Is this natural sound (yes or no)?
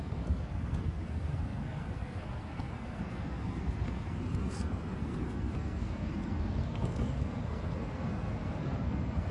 no